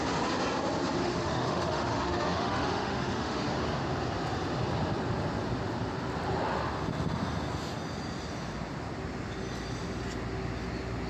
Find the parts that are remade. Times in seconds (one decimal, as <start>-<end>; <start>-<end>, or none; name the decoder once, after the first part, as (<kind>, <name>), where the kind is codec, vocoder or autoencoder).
1.0-3.5 (autoencoder, DAC-VAE)